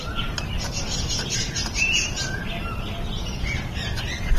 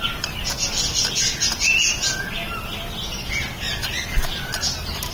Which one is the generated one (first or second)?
first